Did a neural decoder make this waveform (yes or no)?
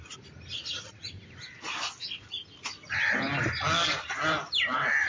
no